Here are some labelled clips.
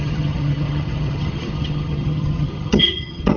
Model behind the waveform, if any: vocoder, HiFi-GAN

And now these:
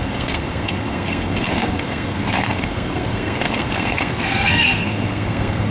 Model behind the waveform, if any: codec, SNAC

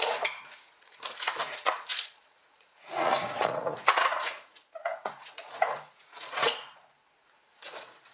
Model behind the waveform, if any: vocoder, Vocos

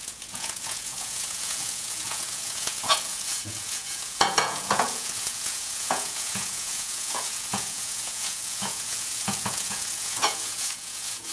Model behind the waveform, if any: vocoder, Vocos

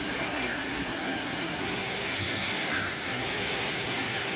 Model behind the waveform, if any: codec, SNAC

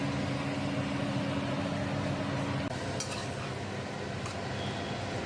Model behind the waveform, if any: none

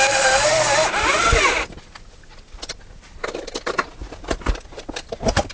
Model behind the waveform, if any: none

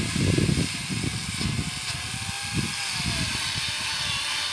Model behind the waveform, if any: none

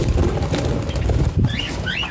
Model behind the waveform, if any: none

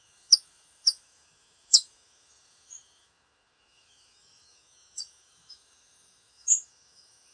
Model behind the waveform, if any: autoencoder, DAC-VAE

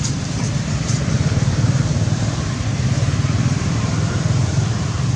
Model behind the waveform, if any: vocoder, BigVGAN v2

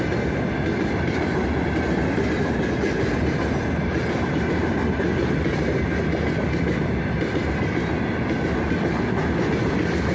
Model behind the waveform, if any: none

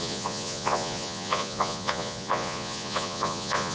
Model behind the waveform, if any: vocoder, Vocos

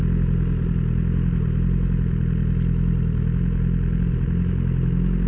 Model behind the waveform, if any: none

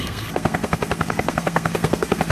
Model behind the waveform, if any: codec, SNAC